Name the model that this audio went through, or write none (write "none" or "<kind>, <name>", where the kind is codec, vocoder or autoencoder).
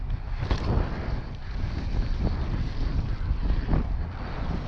none